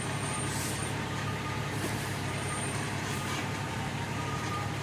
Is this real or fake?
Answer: fake